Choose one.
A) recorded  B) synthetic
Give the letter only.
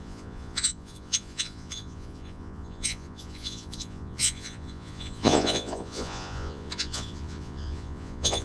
B